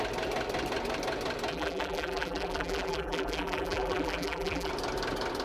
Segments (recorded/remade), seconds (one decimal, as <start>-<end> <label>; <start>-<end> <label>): 0.0-1.5 recorded; 1.5-4.7 remade; 4.7-5.4 recorded